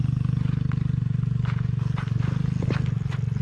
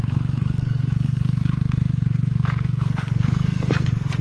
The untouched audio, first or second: first